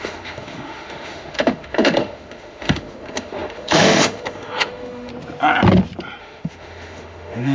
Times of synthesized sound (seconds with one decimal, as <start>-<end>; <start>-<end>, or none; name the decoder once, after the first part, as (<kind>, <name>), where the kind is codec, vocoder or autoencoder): 0.0-5.1 (autoencoder, DAC-VAE); 6.2-7.5